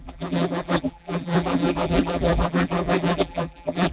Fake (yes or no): yes